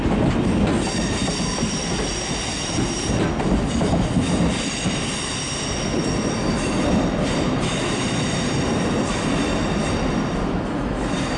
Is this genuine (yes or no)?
yes